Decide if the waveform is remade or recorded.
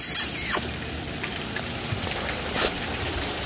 recorded